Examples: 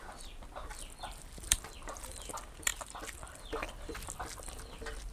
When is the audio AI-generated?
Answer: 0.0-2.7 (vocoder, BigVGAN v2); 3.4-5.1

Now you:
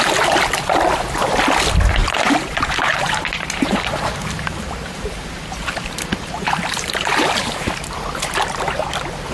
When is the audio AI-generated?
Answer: 2.0-7.1 (vocoder, BigVGAN v2)

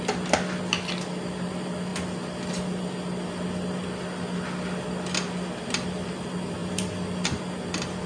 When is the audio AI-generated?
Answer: 6.6-7.4 (vocoder, BigVGAN v2)